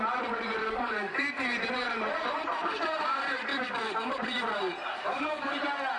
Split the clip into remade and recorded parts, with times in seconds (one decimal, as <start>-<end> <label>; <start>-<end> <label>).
0.0-0.6 recorded; 0.6-1.4 remade; 1.4-3.5 recorded; 3.5-4.1 remade; 4.1-4.9 recorded; 4.9-5.5 remade; 5.5-6.0 recorded